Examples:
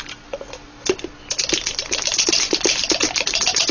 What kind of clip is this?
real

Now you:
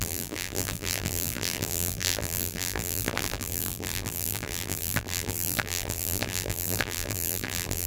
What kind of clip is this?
fake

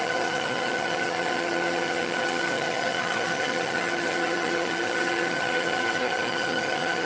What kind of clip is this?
fake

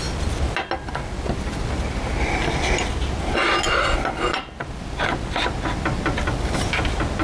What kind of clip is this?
real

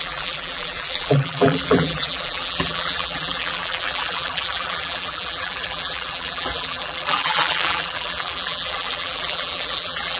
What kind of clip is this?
fake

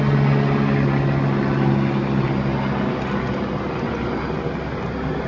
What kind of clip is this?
real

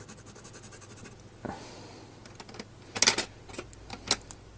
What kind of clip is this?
real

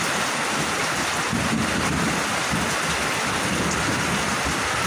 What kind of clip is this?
fake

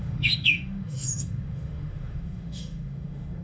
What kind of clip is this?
fake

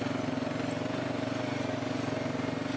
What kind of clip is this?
real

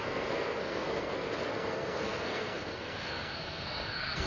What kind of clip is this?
fake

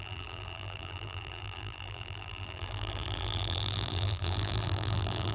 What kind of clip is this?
fake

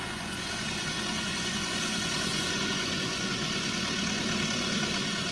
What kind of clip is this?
fake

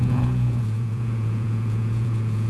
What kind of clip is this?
fake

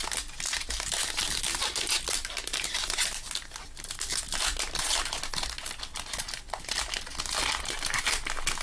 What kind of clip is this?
real